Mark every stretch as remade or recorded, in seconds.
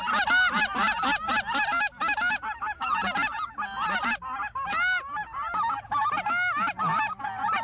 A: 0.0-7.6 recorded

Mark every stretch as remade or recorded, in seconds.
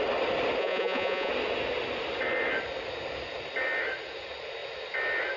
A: 0.0-0.6 recorded; 0.6-1.3 remade; 1.3-5.4 recorded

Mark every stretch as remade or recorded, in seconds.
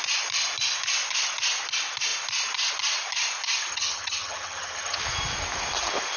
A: 0.0-3.7 recorded; 3.7-5.0 remade; 5.0-6.2 recorded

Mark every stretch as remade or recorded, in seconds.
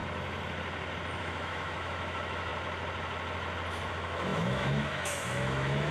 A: 0.0-1.2 recorded; 1.2-2.5 remade; 2.5-3.9 recorded; 3.9-5.9 remade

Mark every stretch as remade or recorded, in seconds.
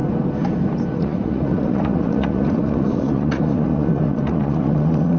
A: 0.0-0.9 recorded; 0.9-5.2 remade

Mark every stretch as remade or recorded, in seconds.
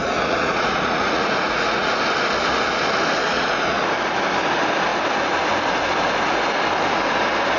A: 0.0-2.0 remade; 2.0-3.3 recorded; 3.3-3.9 remade; 3.9-7.6 recorded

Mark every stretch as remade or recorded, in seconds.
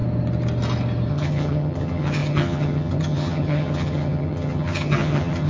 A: 0.0-1.1 recorded; 1.1-5.5 remade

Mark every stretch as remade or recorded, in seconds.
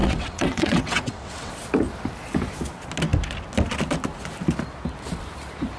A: 0.0-1.5 remade; 1.5-5.8 recorded